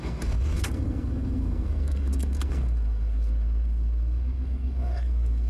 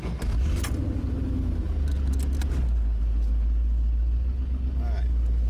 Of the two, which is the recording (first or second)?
second